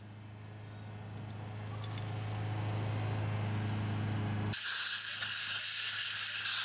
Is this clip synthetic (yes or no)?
no